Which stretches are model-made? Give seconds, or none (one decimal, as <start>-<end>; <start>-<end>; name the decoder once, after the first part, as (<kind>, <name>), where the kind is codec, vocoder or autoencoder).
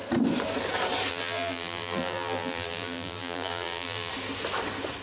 1.1-4.1 (vocoder, BigVGAN v2)